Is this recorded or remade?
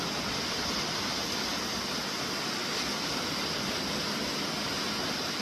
recorded